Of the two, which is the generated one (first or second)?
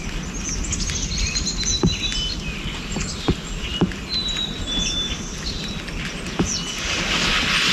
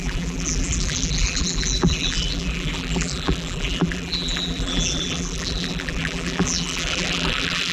second